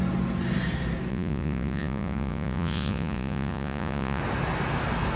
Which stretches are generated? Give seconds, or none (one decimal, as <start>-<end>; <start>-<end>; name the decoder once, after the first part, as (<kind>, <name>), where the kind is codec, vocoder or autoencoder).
1.1-4.2 (vocoder, Vocos)